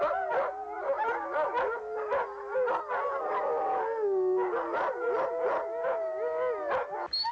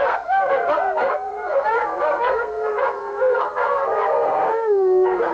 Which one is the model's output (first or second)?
second